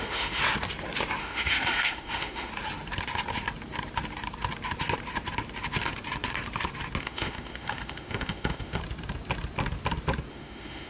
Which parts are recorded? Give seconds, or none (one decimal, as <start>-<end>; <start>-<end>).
0.4-1.2; 2.5-7.0; 8.8-10.3

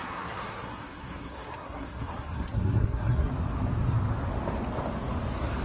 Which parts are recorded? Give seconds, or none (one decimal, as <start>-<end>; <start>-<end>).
3.3-5.6

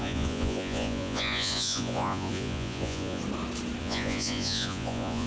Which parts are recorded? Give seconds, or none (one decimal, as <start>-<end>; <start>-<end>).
3.2-3.8

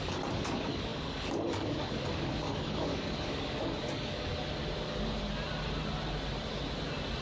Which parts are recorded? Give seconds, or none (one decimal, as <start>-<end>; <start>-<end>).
4.3-7.2

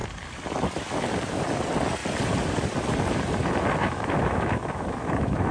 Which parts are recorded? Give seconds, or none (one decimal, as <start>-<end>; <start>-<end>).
0.0-3.8